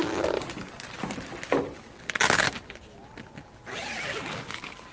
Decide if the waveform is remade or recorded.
recorded